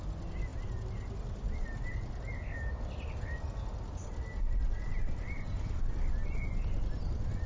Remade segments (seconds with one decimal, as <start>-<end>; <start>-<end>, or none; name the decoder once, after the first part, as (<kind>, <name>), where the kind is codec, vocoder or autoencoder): none